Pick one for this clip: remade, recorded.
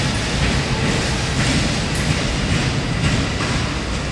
recorded